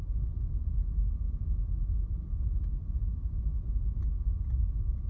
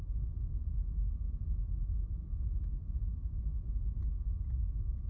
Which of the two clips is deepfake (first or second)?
second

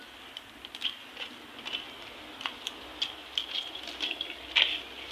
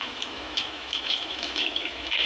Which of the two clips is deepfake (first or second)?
second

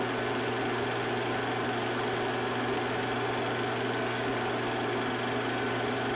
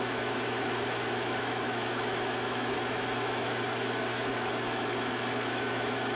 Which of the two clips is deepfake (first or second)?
second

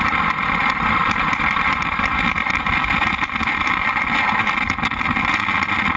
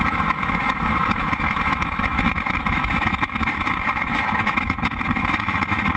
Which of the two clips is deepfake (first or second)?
second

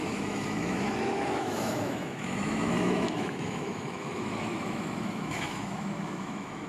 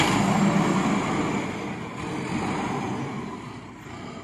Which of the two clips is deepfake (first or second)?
first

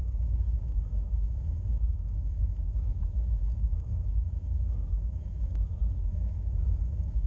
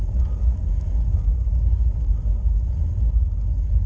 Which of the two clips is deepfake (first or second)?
first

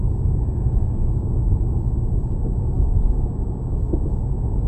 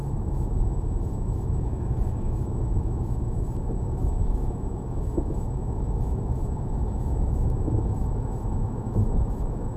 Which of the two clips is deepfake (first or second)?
second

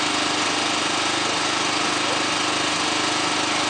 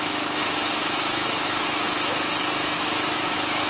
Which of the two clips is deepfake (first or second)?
second